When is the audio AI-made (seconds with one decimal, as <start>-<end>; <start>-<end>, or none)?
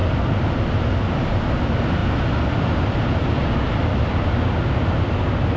none